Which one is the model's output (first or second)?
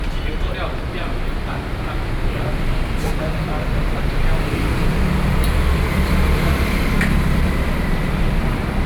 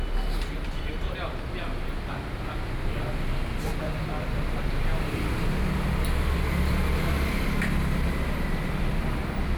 first